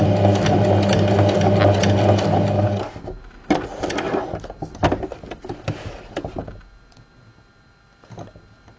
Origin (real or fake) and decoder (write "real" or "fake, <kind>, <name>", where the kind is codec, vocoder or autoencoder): real